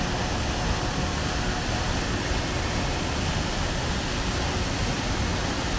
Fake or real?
fake